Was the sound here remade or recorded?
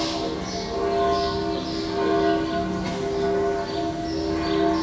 recorded